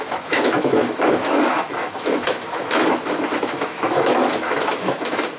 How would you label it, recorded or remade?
remade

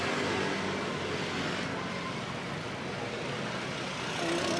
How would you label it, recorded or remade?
recorded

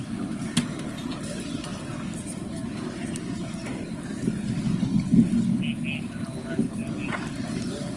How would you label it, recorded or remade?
recorded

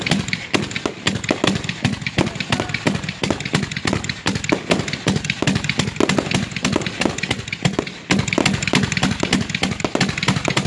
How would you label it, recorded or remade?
recorded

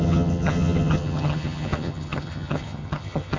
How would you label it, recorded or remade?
remade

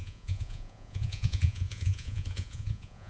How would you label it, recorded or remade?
remade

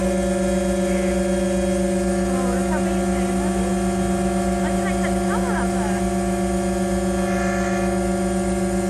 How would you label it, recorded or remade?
recorded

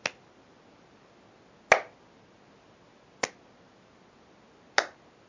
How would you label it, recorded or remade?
recorded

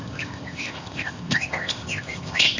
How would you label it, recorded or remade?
remade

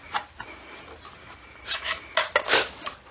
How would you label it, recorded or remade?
recorded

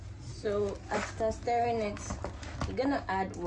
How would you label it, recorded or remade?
recorded